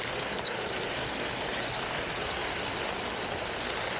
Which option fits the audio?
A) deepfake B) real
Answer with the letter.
B